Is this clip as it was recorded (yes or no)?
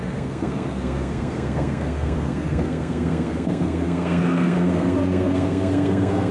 no